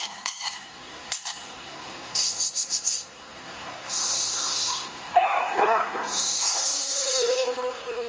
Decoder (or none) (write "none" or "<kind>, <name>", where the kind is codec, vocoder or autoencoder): codec, SNAC